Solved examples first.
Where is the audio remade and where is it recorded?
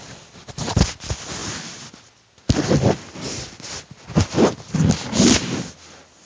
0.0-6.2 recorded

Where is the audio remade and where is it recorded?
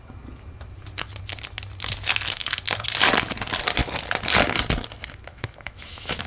0.0-5.3 recorded; 5.3-6.3 remade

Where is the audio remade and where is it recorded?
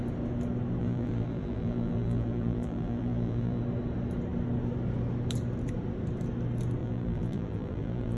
0.0-0.8 recorded; 0.8-3.6 remade; 3.6-6.8 recorded; 6.8-8.2 remade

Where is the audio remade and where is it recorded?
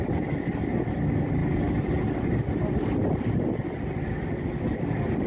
0.0-5.3 recorded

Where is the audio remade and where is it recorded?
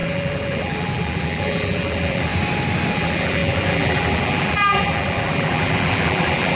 0.0-2.3 remade; 2.3-2.9 recorded; 2.9-6.5 remade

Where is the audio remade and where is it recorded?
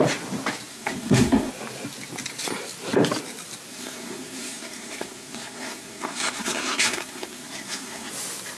0.0-0.7 recorded; 0.7-1.5 remade; 1.5-3.7 recorded; 3.7-8.1 remade; 8.1-8.6 recorded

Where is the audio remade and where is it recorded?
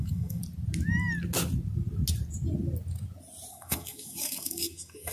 0.0-0.4 remade; 0.4-3.5 recorded; 3.5-5.1 remade